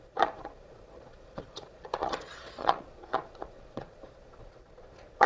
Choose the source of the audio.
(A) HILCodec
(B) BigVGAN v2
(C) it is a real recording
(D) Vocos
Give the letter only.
D